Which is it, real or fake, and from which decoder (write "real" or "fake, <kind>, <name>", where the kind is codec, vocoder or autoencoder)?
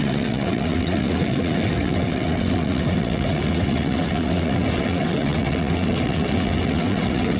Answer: fake, vocoder, WaveNeXt